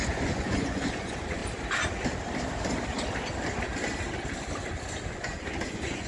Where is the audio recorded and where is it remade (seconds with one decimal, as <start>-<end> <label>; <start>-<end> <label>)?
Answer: 0.0-1.4 remade; 1.4-5.1 recorded; 5.1-6.1 remade